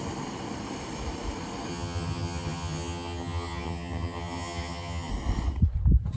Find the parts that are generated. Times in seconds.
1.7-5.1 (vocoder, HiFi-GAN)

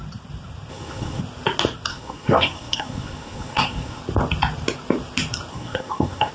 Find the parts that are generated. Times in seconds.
0.7-1.2 (codec, SNAC); 1.9-4.0; 5.5-6.3

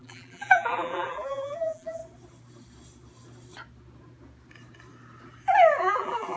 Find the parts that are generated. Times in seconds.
0.0-2.0 (vocoder, BigVGAN v2); 5.8-6.4